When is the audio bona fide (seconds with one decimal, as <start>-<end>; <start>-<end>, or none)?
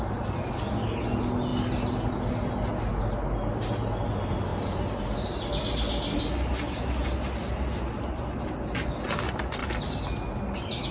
0.0-10.9